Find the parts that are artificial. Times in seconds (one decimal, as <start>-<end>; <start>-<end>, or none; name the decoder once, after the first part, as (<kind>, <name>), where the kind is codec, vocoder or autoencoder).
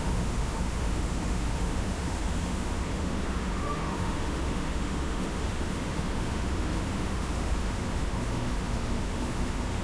0.0-9.8 (autoencoder, DAC-VAE)